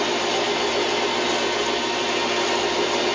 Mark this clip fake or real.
real